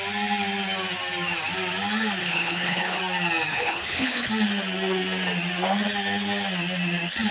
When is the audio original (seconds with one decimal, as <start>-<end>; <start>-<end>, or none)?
0.0-2.2; 3.0-3.5; 4.3-7.3